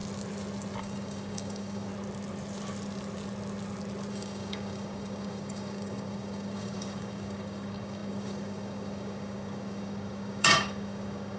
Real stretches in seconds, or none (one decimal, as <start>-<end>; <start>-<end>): 0.0-0.8; 1.9-4.1